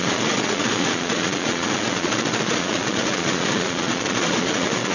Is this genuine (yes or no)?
no